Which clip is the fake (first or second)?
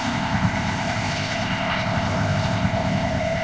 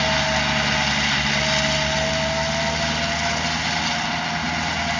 first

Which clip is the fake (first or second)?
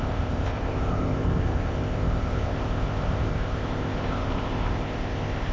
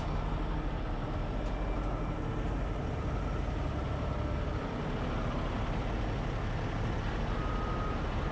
first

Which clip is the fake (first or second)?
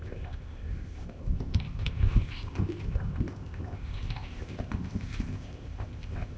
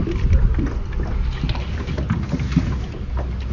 first